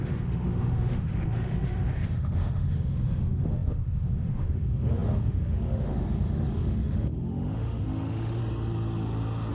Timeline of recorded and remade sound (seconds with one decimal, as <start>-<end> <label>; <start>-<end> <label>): 0.0-8.4 remade; 8.4-9.5 recorded